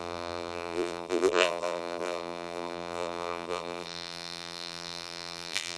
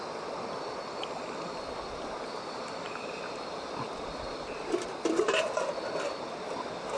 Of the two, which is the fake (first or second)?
first